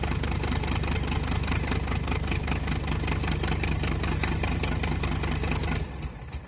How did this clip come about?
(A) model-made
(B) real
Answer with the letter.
B